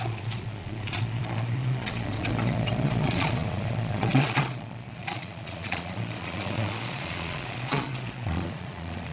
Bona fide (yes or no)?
no